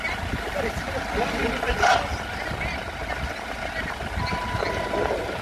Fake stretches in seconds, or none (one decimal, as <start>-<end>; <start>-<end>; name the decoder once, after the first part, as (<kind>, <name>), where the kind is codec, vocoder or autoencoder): none